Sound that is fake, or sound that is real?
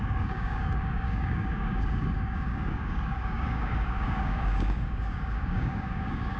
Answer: fake